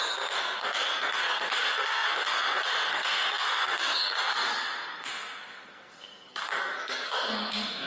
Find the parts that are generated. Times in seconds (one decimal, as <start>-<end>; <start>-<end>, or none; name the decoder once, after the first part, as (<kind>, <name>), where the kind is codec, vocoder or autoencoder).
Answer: 0.0-7.9 (codec, SNAC)